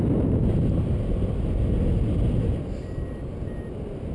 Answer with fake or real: real